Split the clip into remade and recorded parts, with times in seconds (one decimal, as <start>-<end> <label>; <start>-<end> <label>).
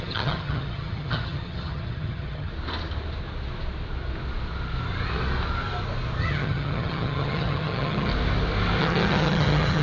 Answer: 0.0-2.5 remade; 2.5-6.2 recorded; 6.2-8.1 remade; 8.1-8.8 recorded; 8.8-9.8 remade